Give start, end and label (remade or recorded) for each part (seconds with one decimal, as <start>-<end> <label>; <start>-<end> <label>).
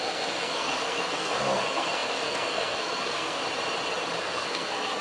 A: 0.0-3.4 remade; 3.4-4.2 recorded; 4.2-5.0 remade